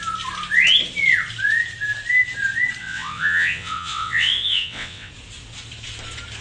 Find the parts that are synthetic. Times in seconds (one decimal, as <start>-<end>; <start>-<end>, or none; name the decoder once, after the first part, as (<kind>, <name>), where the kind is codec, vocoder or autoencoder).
2.8-5.1 (vocoder, WaveNeXt)